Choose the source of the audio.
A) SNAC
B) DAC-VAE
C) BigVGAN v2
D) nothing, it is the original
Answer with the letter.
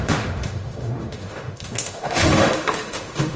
B